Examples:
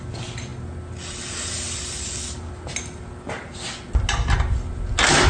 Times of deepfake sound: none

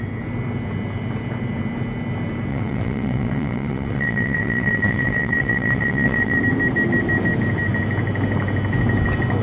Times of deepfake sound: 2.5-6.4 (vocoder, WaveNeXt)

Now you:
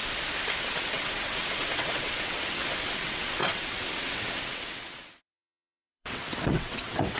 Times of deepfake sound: 0.6-7.2 (vocoder, WaveNeXt)